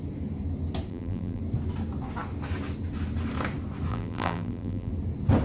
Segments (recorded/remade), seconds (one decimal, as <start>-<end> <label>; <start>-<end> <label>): 0.0-0.9 recorded; 0.9-1.4 remade; 1.4-3.9 recorded; 3.9-4.9 remade; 4.9-5.4 recorded